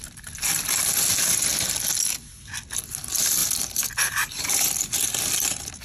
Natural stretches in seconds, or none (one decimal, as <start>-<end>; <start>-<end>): 0.0-3.4; 4.8-5.8